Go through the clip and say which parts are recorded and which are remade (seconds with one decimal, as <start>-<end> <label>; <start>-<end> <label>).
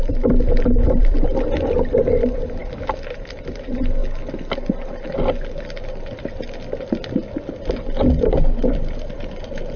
0.0-4.0 remade; 4.0-8.7 recorded; 8.7-9.8 remade